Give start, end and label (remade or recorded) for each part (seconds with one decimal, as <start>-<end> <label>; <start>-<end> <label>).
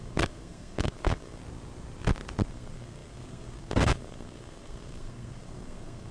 0.0-1.4 remade; 1.4-2.5 recorded; 2.5-6.1 remade